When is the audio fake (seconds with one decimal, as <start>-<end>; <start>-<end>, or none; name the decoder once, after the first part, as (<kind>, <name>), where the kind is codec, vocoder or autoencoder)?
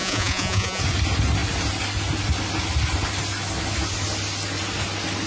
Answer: 0.0-0.8 (vocoder, Vocos)